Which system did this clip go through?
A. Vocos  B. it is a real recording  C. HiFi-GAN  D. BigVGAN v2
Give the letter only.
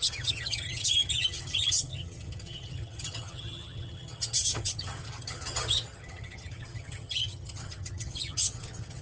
C